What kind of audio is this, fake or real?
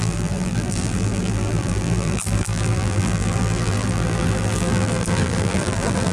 fake